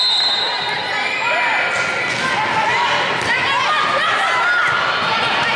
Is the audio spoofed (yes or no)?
no